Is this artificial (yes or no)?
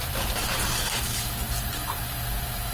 yes